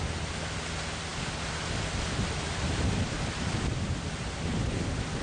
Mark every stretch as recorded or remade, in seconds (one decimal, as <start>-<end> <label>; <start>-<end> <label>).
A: 0.0-5.2 recorded